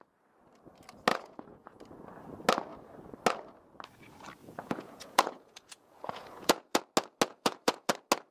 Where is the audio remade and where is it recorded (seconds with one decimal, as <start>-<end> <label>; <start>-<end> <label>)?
0.0-1.1 recorded; 1.1-1.8 remade; 1.8-4.4 recorded; 4.4-6.8 remade; 6.8-7.3 recorded; 7.3-7.9 remade; 7.9-8.3 recorded